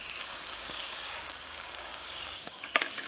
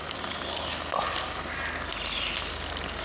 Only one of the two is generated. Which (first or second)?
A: first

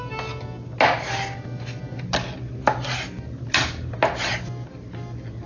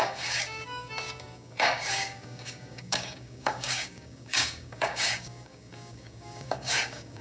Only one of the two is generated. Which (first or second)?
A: second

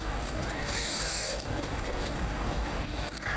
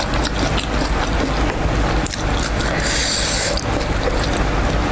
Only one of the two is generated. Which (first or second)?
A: first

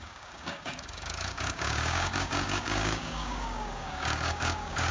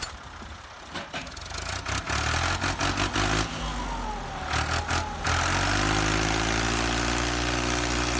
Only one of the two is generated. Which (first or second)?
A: first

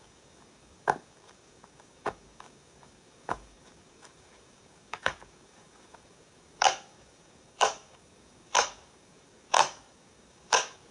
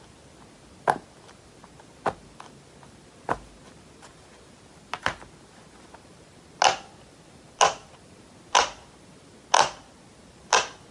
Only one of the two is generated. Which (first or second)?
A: first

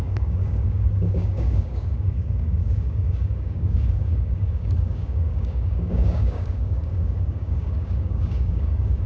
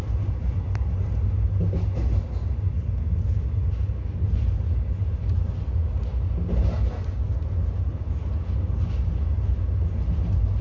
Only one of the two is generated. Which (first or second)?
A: first